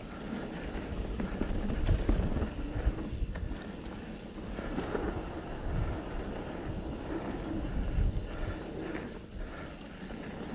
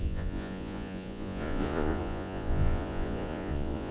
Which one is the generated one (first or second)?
second